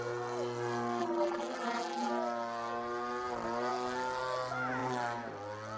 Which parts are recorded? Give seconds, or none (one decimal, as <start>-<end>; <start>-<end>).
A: 0.0-1.0; 2.1-5.8